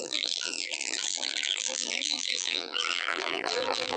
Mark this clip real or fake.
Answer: fake